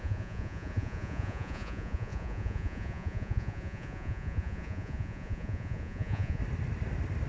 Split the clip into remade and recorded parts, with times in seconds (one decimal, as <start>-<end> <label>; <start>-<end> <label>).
0.0-6.4 remade; 6.4-7.3 recorded